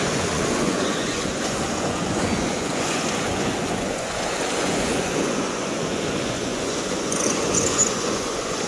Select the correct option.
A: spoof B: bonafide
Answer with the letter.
A